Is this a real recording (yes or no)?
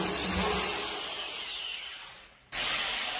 yes